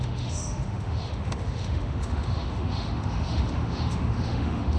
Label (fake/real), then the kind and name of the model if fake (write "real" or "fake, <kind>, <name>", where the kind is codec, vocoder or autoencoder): fake, autoencoder, DAC-VAE